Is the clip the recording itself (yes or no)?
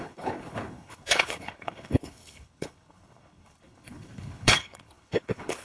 no